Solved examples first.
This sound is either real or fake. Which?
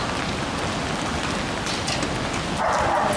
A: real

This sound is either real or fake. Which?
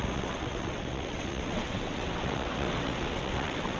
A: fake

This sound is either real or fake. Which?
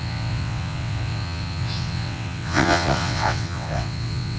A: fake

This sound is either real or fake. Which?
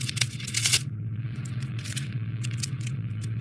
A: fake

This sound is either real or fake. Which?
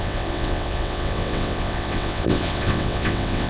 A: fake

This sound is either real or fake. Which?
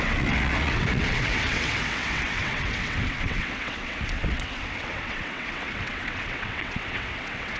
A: fake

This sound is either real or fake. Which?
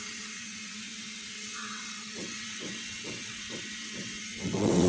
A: fake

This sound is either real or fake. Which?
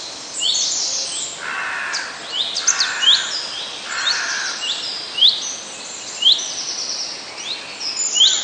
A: real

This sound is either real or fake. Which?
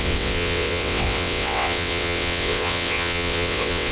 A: fake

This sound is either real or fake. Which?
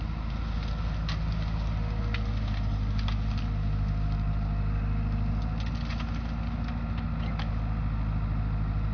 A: real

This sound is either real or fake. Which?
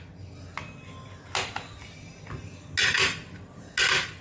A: real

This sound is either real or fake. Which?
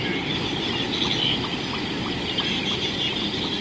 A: real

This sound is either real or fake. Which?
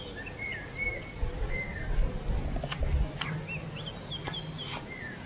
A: real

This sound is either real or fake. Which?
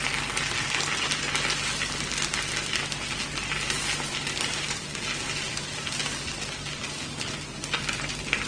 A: real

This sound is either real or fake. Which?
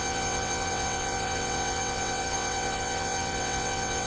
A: fake